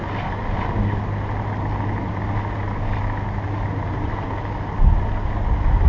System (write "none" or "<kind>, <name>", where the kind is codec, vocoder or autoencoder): none